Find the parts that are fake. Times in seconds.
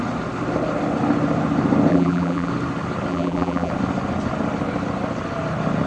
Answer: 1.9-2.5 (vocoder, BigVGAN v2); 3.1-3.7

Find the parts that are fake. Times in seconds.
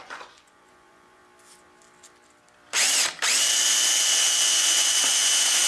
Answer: 0.0-1.2 (vocoder, Vocos); 4.6-5.7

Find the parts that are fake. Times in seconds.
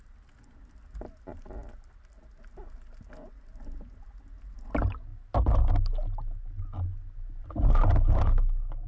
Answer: none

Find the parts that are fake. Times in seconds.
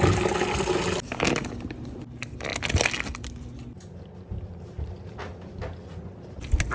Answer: none